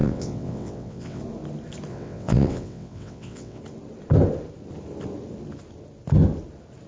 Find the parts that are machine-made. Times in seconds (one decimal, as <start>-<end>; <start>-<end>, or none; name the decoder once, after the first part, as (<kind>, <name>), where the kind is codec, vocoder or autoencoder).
0.0-1.2 (vocoder, WaveNeXt); 1.9-3.6